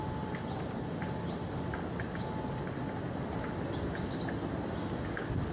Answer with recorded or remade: recorded